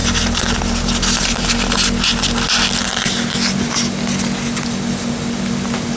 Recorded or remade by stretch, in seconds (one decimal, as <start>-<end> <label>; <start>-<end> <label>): 0.0-6.0 recorded